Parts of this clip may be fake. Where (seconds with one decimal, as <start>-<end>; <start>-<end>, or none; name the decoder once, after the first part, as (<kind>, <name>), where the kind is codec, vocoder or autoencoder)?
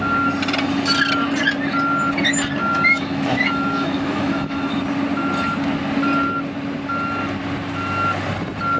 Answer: 2.6-4.7 (autoencoder, DAC-VAE)